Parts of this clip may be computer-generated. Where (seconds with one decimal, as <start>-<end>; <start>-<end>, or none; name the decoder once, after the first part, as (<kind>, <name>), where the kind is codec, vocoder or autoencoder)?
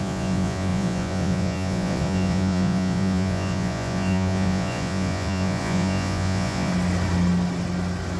0.0-6.7 (vocoder, Vocos)